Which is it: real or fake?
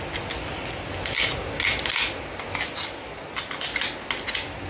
real